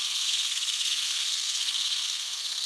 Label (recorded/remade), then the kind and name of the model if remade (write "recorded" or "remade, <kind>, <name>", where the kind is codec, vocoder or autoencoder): remade, codec, SNAC